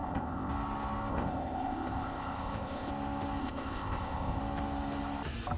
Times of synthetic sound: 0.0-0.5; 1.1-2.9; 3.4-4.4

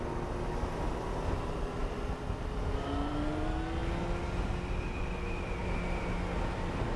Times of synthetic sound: none

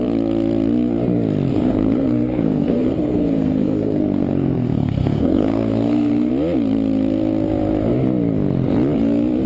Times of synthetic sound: 1.5-6.3

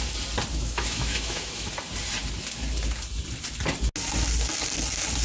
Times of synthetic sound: 0.5-1.7